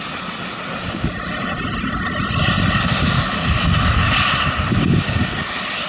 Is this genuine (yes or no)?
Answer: yes